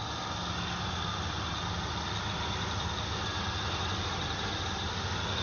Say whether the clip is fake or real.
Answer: real